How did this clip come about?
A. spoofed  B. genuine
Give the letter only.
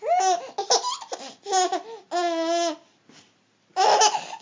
B